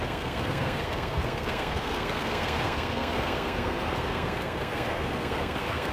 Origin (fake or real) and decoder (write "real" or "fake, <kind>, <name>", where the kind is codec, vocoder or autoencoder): fake, codec, SNAC